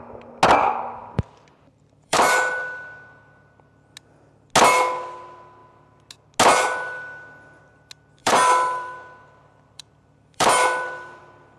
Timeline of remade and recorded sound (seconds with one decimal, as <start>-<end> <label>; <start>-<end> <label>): 0.0-1.0 recorded; 1.0-2.5 remade; 2.5-8.2 recorded; 8.2-11.2 remade; 11.2-11.6 recorded